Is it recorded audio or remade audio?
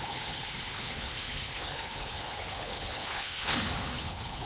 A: remade